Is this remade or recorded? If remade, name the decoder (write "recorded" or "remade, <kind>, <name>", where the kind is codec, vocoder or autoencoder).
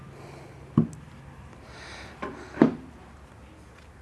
recorded